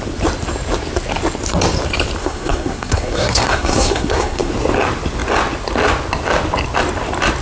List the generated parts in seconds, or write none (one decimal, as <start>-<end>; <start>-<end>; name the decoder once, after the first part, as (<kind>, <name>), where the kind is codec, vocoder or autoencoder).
2.2-4.5 (codec, SNAC)